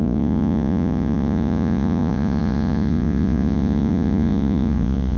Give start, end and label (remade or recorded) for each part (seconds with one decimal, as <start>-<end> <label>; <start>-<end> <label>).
0.0-5.2 remade

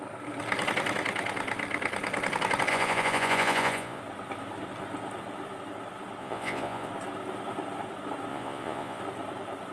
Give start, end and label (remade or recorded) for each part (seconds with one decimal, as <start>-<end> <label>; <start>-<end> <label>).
0.0-2.7 recorded; 2.7-4.0 remade; 4.0-6.2 recorded; 6.2-6.9 remade; 6.9-8.3 recorded; 8.3-9.0 remade; 9.0-9.7 recorded

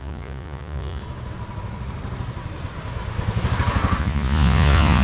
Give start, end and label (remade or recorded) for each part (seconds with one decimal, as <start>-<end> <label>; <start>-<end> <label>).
0.0-1.0 remade; 1.0-4.0 recorded; 4.0-5.0 remade

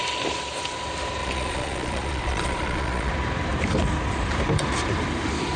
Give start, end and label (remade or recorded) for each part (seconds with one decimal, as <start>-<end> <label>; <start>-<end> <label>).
0.0-1.2 recorded; 1.2-3.1 remade; 3.1-5.6 recorded

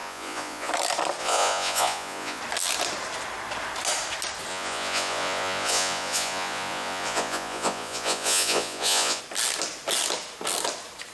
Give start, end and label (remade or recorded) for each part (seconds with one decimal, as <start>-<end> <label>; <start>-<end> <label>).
0.0-0.7 remade; 0.7-1.2 recorded; 1.2-2.4 remade; 2.4-4.5 recorded; 4.5-9.2 remade; 9.2-11.1 recorded

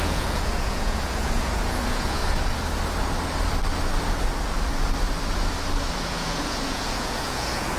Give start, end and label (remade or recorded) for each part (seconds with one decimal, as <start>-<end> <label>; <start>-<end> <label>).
0.0-2.2 remade; 2.2-5.9 recorded; 5.9-7.8 remade

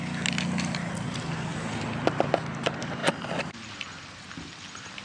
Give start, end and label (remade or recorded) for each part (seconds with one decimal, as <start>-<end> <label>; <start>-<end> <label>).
0.0-5.0 recorded

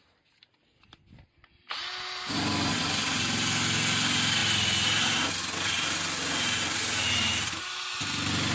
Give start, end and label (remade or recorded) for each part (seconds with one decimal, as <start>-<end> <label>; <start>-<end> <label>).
0.0-8.5 recorded